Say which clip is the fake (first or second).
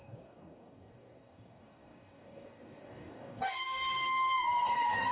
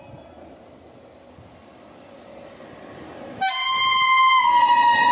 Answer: first